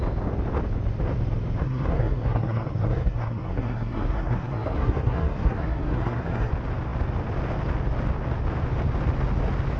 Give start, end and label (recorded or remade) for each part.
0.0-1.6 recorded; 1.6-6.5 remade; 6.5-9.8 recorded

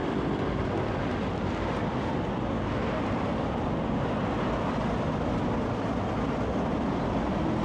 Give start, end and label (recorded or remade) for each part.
0.0-2.5 recorded; 2.5-3.0 remade; 3.0-7.6 recorded